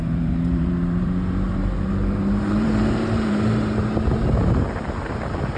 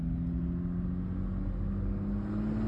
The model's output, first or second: first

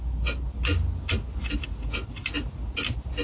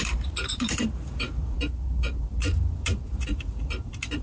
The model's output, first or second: second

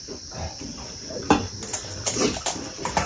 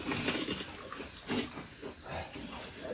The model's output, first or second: first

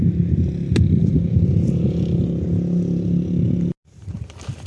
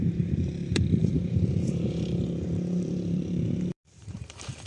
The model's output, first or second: second